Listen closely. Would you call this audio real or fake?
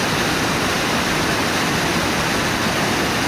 real